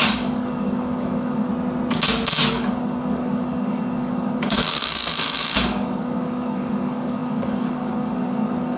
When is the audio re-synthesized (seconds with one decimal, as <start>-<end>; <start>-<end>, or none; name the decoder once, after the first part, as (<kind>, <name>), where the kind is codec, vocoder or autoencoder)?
0.0-1.5 (codec, DAC); 2.5-8.8